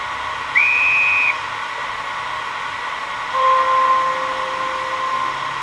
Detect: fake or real real